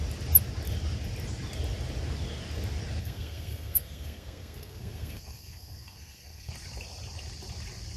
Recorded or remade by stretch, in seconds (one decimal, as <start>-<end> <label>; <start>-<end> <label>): 0.0-3.0 recorded; 3.0-6.5 remade; 6.5-8.0 recorded